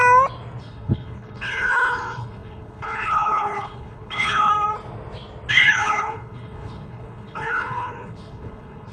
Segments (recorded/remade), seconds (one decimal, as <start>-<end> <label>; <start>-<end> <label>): 0.0-0.6 recorded; 0.6-4.5 remade; 4.5-5.5 recorded; 5.5-8.9 remade